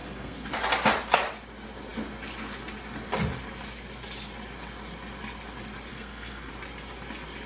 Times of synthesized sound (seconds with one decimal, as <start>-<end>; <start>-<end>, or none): 0.0-0.5; 5.9-6.5